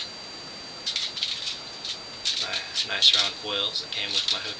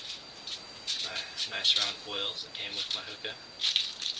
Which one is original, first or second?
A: first